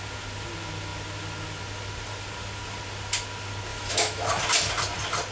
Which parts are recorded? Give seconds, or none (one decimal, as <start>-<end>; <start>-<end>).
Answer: 0.0-3.7; 4.3-5.3

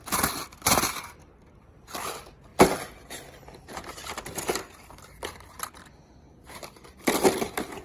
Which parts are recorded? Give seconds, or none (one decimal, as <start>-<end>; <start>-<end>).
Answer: 0.0-7.8

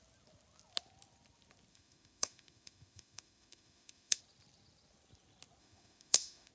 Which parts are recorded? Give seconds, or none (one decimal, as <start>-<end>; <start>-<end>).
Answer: 0.0-1.7; 4.2-5.6

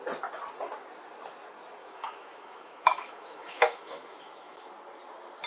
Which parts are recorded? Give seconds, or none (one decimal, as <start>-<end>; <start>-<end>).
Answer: 0.0-1.8; 4.7-5.5

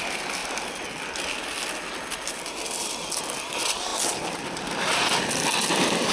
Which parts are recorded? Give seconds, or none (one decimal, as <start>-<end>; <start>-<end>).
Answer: 0.0-6.1

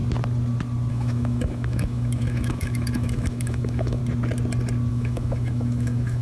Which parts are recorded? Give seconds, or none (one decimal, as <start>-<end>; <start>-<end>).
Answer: 0.0-0.9; 4.0-4.9